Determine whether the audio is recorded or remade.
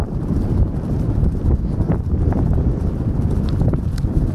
remade